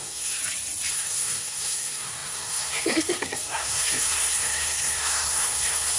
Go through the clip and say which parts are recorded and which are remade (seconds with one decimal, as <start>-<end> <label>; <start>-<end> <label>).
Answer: 0.0-0.4 remade; 0.4-0.9 recorded; 0.9-6.0 remade